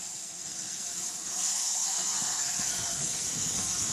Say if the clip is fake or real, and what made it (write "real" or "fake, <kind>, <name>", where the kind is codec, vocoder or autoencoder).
fake, codec, SNAC